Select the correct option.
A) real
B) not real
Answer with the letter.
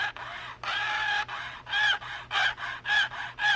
A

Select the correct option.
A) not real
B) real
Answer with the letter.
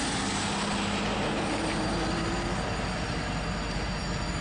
B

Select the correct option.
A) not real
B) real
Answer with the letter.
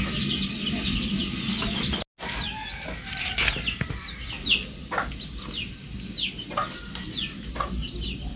B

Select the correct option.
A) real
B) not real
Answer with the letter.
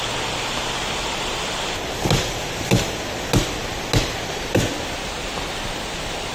A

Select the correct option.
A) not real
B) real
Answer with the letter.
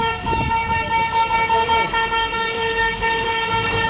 A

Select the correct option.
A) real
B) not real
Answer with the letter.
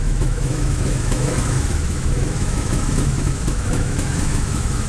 B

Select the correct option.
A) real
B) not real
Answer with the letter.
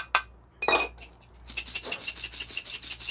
A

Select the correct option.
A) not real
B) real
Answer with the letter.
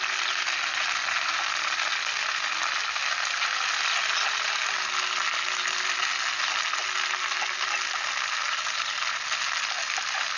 B